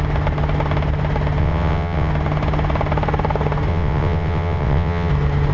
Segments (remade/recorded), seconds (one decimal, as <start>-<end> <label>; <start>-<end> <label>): 0.0-1.4 recorded; 1.4-2.1 remade; 2.1-3.7 recorded; 3.7-5.1 remade; 5.1-5.5 recorded